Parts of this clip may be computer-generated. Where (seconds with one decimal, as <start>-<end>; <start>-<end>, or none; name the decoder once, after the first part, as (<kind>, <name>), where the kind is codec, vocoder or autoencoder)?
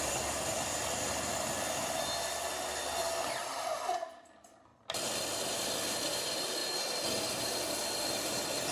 0.0-1.3 (vocoder, BigVGAN v2); 3.4-4.7; 5.5-8.7